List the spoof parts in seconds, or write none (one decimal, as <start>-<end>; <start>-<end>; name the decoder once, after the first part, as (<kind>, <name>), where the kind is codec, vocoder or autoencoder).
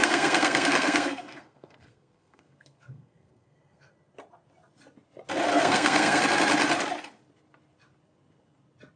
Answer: 0.0-3.9 (codec, SNAC); 5.5-6.2